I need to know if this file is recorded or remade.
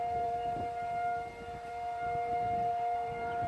remade